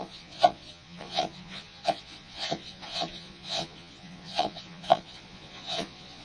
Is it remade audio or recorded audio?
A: remade